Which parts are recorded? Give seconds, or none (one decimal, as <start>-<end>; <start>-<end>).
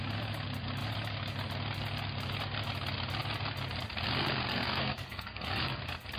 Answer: 0.0-4.5; 5.8-6.2